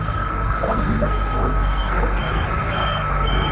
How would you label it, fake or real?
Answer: fake